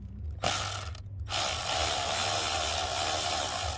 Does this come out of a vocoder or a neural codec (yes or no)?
no